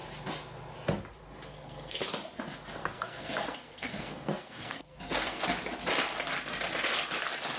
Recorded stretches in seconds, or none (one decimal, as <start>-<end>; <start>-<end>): 0.0-1.5; 2.1-2.8; 5.4-7.6